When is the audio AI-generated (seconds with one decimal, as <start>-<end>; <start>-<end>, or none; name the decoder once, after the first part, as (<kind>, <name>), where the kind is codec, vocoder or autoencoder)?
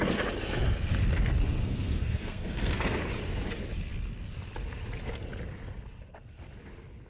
1.6-3.0 (codec, SNAC)